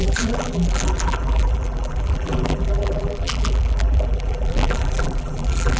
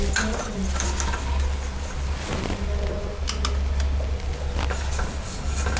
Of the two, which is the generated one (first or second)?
first